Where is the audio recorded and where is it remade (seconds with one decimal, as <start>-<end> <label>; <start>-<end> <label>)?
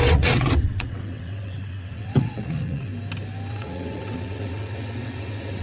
0.0-2.9 remade; 2.9-3.5 recorded; 3.5-5.6 remade